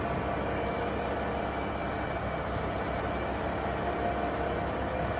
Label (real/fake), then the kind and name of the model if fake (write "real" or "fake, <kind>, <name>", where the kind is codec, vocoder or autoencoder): real